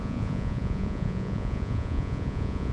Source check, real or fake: fake